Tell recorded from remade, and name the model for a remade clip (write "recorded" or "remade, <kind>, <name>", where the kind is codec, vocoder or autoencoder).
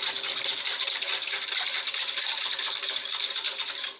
recorded